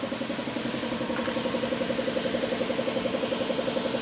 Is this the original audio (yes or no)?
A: yes